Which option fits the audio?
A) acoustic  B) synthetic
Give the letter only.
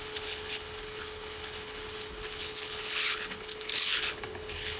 B